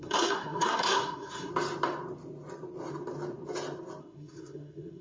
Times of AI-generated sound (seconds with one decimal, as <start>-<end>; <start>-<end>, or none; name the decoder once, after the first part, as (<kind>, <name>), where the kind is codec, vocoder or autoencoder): 0.0-1.5 (codec, SNAC); 4.0-5.0